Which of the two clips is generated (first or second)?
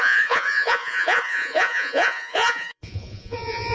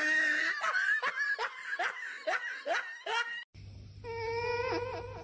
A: first